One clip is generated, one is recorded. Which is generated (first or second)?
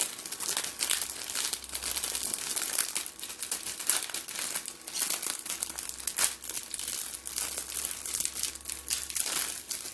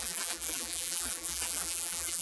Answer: second